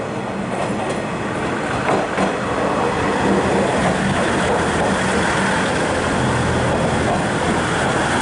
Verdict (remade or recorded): recorded